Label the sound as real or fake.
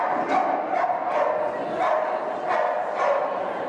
real